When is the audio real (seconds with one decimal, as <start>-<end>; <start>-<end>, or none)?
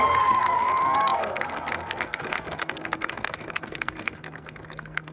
none